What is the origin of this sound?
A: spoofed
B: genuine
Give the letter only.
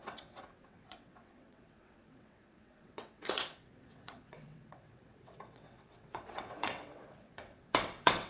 A